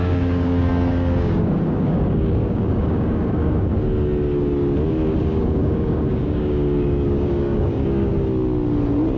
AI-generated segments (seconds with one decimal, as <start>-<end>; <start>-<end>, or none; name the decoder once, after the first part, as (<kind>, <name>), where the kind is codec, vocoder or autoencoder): 0.0-3.7 (codec, DAC); 4.9-8.1